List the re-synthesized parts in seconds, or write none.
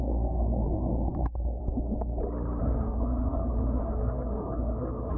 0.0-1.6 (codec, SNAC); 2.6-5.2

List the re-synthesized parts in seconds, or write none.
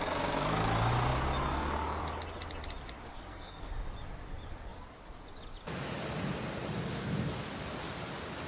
3.1-3.7 (codec, SNAC)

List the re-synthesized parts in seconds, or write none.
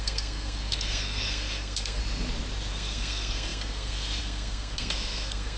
0.0-2.0 (codec, SNAC); 2.7-5.6